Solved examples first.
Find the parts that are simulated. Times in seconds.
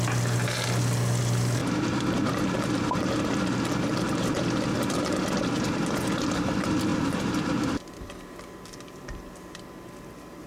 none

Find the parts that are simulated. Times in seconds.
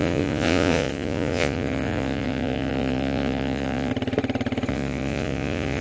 0.0-3.9 (vocoder, Vocos); 4.7-5.8